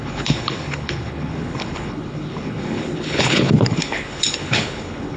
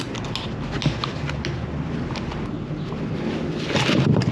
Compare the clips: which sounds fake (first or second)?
first